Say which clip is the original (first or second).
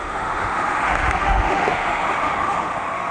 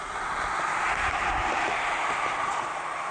second